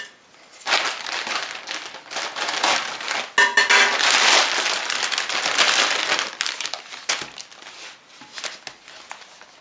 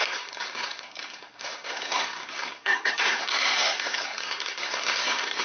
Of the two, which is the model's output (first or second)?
second